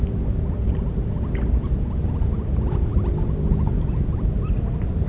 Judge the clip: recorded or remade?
recorded